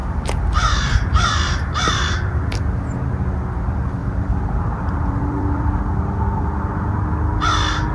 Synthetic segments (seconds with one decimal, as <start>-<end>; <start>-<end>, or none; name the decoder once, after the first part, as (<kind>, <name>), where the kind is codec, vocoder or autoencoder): 0.0-2.9 (vocoder, BigVGAN v2); 4.0-5.8